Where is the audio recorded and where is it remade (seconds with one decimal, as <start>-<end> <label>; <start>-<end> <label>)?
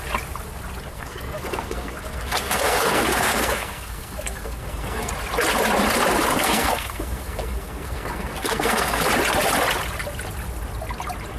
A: 0.0-0.9 recorded; 0.9-5.1 remade; 5.1-6.3 recorded; 6.3-9.0 remade; 9.0-11.4 recorded